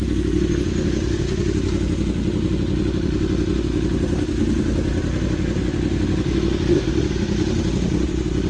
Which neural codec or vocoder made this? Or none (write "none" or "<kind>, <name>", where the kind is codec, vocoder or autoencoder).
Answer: none